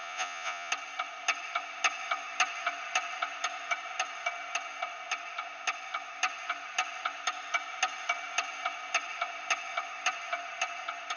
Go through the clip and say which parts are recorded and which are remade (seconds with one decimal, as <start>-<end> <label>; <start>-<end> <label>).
0.0-0.7 remade; 0.7-11.2 recorded